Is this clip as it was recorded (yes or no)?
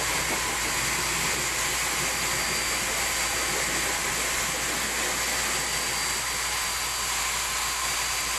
yes